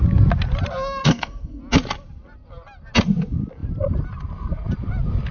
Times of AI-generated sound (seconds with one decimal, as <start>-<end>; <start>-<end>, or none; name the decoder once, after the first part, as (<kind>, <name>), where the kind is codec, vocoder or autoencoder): 1.0-1.6 (codec, SNAC)